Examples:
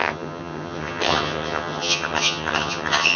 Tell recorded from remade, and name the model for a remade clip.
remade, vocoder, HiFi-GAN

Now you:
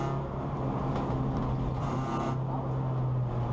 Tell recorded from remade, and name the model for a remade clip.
recorded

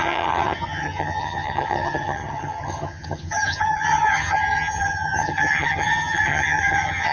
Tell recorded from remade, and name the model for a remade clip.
remade, vocoder, HiFi-GAN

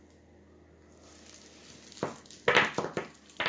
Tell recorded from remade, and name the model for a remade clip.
recorded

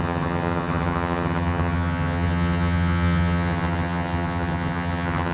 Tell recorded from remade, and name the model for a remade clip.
remade, vocoder, HiFi-GAN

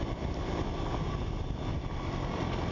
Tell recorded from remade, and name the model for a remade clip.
recorded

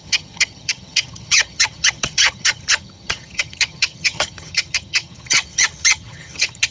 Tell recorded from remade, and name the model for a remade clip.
remade, vocoder, HiFi-GAN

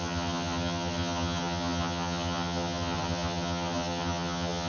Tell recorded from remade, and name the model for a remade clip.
remade, vocoder, HiFi-GAN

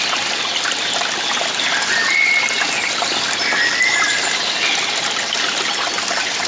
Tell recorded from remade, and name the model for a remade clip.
recorded